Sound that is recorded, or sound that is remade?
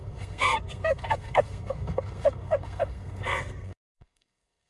remade